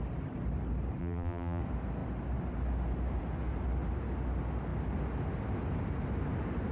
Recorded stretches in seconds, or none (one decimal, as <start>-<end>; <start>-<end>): 0.0-1.0; 1.6-6.7